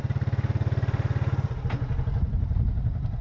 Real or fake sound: real